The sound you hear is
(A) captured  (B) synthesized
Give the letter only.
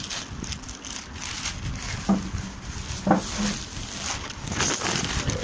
A